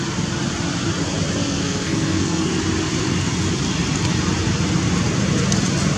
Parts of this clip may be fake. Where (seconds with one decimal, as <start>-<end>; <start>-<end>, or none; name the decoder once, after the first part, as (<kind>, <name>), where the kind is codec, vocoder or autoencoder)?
1.4-2.5 (codec, SNAC)